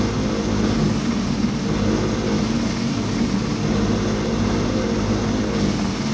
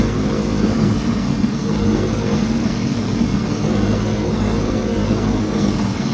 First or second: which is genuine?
first